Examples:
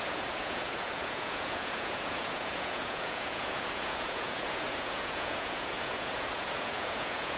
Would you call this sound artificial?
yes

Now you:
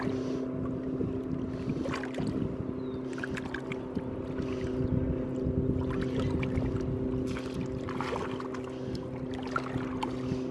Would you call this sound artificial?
no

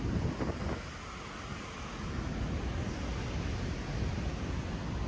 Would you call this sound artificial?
no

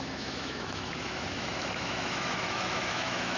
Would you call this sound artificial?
yes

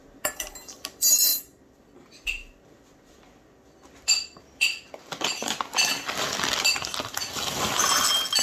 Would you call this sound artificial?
no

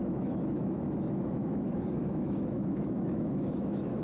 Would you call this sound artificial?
yes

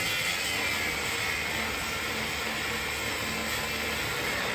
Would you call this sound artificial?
no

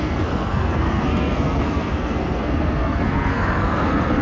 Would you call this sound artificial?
yes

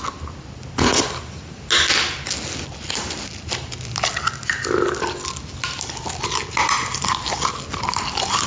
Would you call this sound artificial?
no